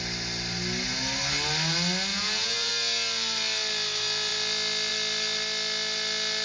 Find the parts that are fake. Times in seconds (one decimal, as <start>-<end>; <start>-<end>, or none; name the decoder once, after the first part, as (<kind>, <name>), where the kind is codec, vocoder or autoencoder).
2.1-2.7 (vocoder, Vocos)